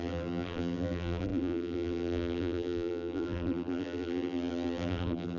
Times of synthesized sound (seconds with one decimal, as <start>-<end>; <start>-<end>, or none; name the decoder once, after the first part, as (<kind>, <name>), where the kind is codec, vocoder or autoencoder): 0.0-5.4 (vocoder, BigVGAN v2)